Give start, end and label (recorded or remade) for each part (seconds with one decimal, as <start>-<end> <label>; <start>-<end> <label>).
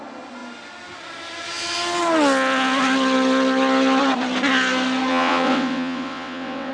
0.0-5.1 recorded; 5.1-6.7 remade